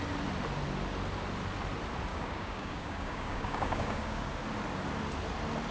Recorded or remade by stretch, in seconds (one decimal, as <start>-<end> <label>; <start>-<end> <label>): 0.0-2.1 recorded; 2.1-4.3 remade; 4.3-5.7 recorded